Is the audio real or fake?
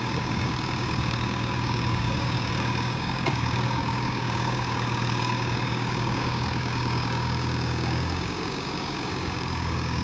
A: fake